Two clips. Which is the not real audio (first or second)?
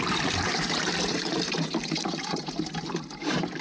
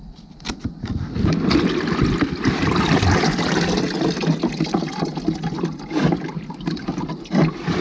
first